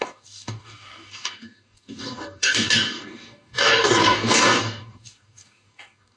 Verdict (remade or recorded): remade